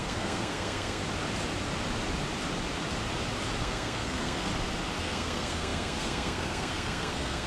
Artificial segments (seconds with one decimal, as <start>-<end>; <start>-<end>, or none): 0.0-1.0; 3.6-4.5; 5.0-7.5